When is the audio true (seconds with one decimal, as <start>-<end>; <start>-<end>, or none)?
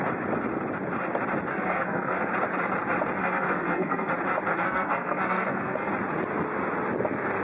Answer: 0.0-1.5; 2.3-3.2; 4.1-4.5; 5.9-7.4